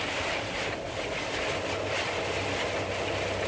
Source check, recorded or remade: recorded